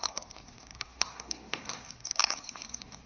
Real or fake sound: fake